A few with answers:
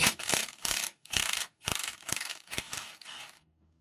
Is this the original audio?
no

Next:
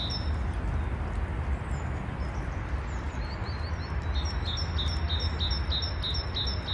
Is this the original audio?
yes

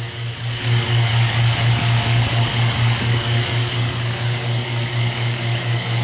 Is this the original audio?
no